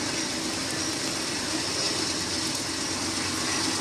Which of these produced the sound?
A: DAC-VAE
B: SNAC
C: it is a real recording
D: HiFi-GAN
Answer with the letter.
C